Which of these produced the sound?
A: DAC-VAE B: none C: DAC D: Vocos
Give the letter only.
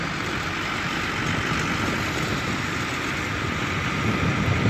B